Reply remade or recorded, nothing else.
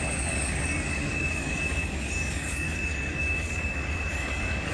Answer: remade